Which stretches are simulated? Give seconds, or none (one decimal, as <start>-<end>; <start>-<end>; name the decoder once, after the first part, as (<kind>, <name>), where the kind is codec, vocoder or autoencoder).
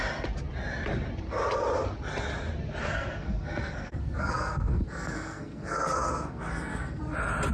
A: 2.8-7.0 (codec, SNAC)